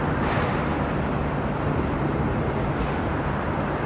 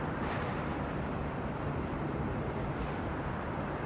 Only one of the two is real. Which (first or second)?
first